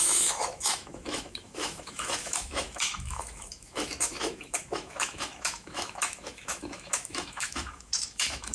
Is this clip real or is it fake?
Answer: fake